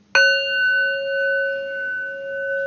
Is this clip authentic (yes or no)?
yes